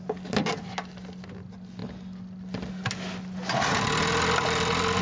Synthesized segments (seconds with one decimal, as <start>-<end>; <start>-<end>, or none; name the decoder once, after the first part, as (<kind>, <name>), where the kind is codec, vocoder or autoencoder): none